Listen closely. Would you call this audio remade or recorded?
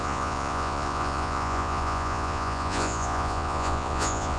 remade